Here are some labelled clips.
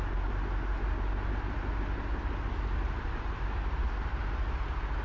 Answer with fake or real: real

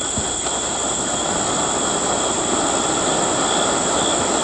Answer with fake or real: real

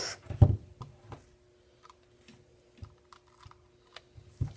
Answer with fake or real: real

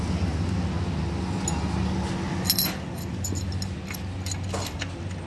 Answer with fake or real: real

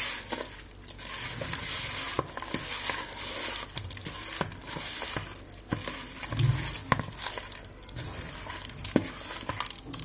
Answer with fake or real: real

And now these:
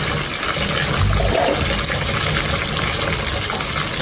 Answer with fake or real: real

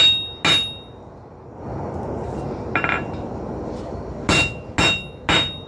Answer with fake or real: real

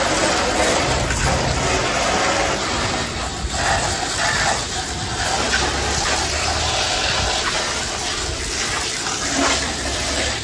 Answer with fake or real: real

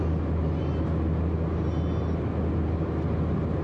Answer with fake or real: real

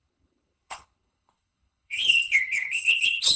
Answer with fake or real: fake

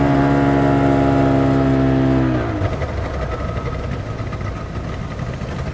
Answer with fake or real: real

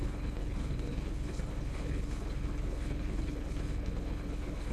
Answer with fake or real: fake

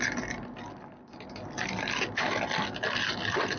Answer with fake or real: real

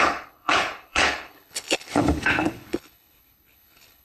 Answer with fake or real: fake